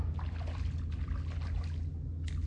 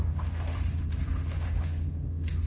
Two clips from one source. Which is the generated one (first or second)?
second